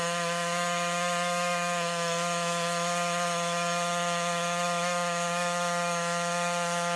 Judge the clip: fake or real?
fake